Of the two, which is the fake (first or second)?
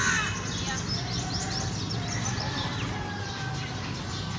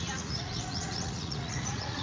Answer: second